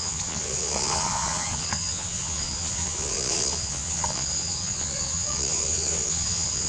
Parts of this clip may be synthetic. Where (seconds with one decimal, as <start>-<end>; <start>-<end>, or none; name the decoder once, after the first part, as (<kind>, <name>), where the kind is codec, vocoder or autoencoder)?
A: 0.0-6.7 (vocoder, Vocos)